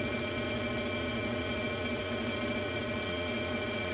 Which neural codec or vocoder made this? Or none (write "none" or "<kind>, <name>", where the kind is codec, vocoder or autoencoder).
vocoder, Vocos